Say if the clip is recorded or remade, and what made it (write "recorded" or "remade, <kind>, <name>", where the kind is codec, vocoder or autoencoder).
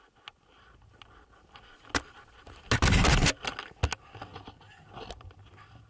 recorded